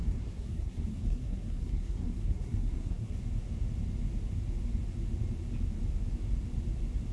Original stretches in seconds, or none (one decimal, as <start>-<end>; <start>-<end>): 3.2-7.1